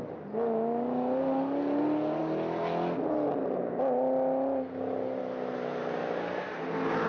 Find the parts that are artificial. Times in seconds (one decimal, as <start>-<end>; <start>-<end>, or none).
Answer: none